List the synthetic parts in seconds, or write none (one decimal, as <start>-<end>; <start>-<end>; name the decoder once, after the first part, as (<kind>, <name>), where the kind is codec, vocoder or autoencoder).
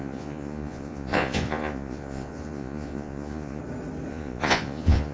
0.0-3.6 (vocoder, Vocos); 4.1-5.1